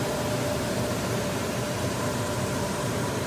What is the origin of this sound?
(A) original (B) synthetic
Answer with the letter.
B